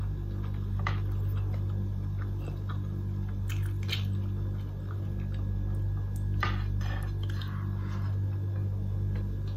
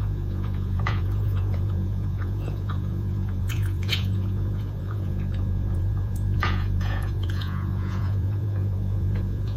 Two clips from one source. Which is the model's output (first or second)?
second